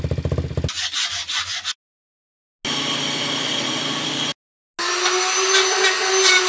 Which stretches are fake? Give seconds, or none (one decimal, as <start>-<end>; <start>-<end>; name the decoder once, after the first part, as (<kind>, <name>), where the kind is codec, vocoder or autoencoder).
none